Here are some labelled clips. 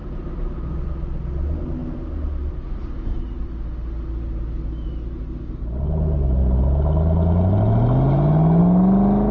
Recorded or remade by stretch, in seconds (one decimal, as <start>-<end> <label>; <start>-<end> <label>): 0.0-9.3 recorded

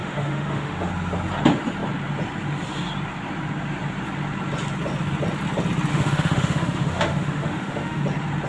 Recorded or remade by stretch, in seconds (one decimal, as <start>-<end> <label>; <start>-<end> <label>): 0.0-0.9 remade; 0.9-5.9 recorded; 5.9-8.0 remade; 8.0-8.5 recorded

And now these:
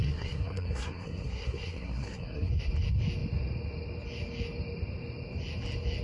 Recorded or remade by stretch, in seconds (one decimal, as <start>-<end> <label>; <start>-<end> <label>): 0.0-2.5 remade; 2.5-6.0 recorded

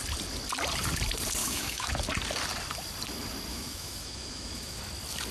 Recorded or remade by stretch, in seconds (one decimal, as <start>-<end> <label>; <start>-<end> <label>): 0.0-1.4 recorded; 1.4-1.9 remade; 1.9-3.5 recorded; 3.5-4.8 remade; 4.8-5.3 recorded

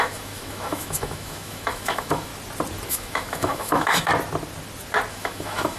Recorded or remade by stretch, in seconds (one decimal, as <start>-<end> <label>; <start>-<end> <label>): 0.0-2.3 remade; 2.3-2.9 recorded; 2.9-4.1 remade; 4.1-5.1 recorded; 5.1-5.8 remade